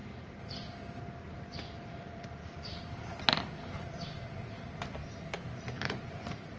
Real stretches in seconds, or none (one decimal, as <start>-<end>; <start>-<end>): 5.0-5.5